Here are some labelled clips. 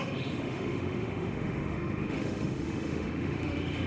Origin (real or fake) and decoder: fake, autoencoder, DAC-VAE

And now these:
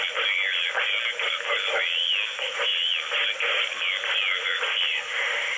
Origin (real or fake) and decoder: fake, vocoder, BigVGAN v2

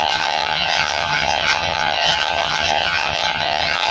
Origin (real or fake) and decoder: fake, vocoder, HiFi-GAN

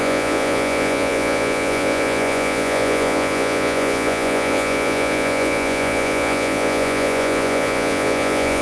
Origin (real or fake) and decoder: fake, vocoder, Vocos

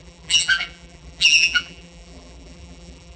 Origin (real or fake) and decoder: fake, vocoder, BigVGAN v2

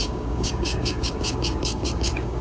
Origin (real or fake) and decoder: fake, codec, DAC